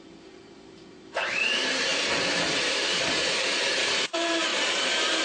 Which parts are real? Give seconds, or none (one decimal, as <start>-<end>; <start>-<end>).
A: 1.9-2.6